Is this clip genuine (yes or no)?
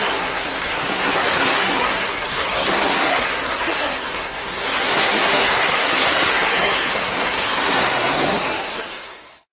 no